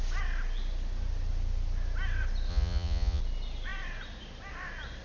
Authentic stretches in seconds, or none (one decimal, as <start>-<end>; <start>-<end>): 0.0-2.5; 3.2-5.0